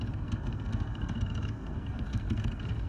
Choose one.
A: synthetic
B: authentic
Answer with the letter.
A